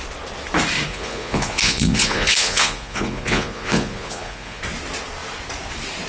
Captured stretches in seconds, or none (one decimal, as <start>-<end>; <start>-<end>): 0.0-0.9; 4.6-6.1